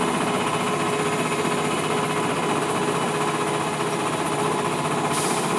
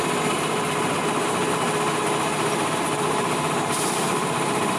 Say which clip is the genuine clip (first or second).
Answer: first